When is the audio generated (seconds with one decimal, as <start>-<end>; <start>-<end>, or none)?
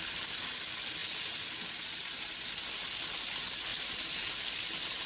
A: 1.0-2.5; 3.7-4.4